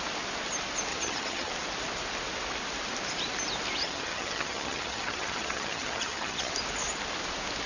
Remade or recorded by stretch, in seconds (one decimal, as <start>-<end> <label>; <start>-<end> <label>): 0.0-0.9 recorded; 0.9-1.5 remade; 1.5-3.8 recorded; 3.8-6.5 remade; 6.5-7.7 recorded